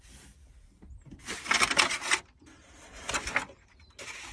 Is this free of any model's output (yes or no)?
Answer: yes